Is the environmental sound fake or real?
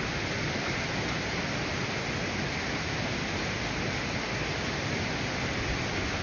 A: real